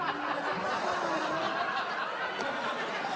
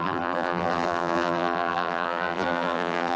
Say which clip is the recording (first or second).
first